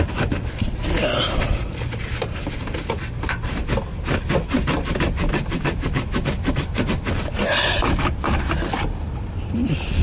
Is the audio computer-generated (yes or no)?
yes